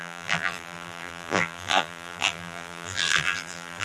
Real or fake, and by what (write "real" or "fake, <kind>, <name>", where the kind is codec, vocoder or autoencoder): fake, vocoder, BigVGAN v2